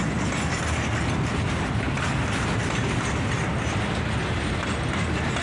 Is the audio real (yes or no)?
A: yes